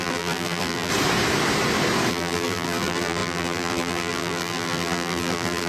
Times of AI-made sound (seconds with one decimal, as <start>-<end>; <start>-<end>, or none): 0.0-0.9; 2.1-5.7